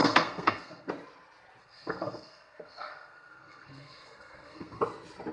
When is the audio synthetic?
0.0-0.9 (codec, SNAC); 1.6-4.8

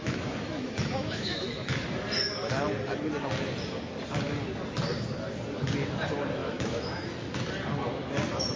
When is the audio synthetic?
0.0-1.8 (autoencoder, DAC-VAE); 6.4-7.1

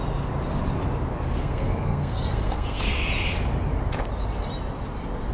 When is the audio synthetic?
1.4-2.9 (codec, SNAC)

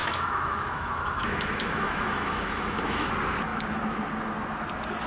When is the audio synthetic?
0.0-3.1 (autoencoder, DAC-VAE)

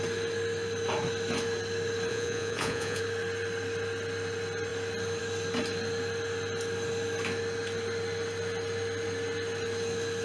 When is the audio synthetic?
2.1-3.0 (vocoder, Vocos)